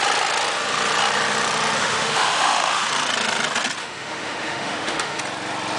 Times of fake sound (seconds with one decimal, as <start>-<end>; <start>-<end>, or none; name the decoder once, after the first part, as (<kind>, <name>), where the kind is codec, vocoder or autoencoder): 1.8-2.9 (autoencoder, DAC-VAE); 3.8-5.2